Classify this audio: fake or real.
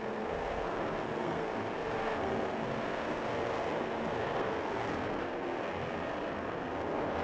fake